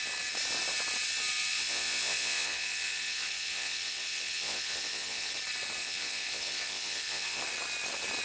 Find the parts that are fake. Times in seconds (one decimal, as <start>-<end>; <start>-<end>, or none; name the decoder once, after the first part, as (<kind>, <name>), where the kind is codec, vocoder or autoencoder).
1.5-5.3 (vocoder, Vocos); 5.8-7.4